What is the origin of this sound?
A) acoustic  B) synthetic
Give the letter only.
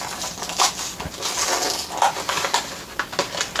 A